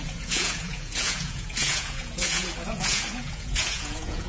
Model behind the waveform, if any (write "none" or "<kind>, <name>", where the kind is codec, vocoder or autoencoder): vocoder, Vocos